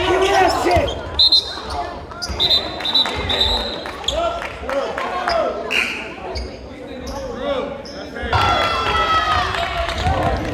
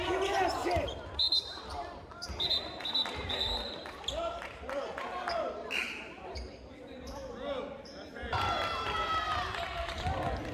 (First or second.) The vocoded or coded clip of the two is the second